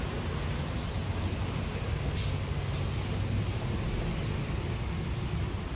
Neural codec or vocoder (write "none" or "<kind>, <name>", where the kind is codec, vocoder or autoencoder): none